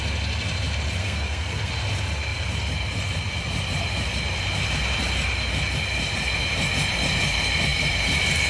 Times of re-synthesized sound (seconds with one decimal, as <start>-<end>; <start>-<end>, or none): 1.0-1.7